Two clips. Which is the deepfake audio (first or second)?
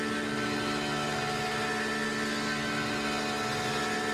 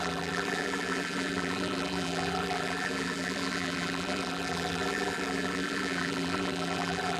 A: second